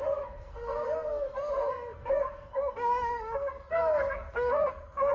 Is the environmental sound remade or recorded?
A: remade